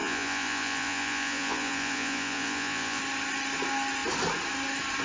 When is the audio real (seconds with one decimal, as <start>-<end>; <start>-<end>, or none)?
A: 3.0-5.0